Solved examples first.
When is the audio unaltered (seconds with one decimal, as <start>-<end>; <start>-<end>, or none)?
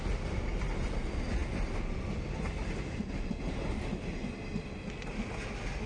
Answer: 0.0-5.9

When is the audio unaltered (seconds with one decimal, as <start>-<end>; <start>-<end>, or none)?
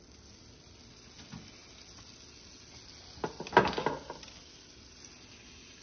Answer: 0.0-5.8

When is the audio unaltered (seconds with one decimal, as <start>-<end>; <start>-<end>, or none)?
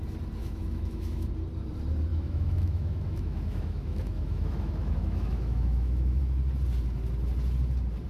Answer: 0.0-0.4; 1.3-2.1; 6.2-8.1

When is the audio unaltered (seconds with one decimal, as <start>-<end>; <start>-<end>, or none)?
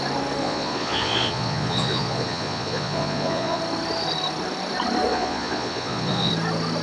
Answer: 0.0-0.4; 3.6-5.1; 6.3-6.8